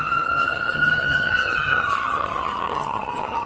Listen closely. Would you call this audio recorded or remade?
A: remade